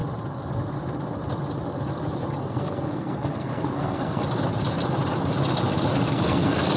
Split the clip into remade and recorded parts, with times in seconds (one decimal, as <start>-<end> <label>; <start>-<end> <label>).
0.0-2.4 recorded; 2.4-4.2 remade; 4.2-6.1 recorded; 6.1-6.8 remade